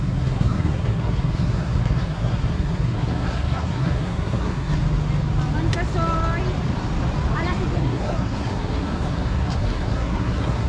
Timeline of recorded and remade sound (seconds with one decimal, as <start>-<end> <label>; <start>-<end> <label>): 0.0-4.8 remade; 4.8-7.8 recorded; 7.8-10.7 remade